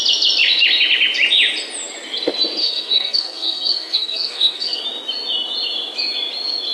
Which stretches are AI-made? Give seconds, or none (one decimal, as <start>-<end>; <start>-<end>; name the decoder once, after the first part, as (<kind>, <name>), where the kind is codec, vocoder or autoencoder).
2.6-4.8 (codec, SNAC)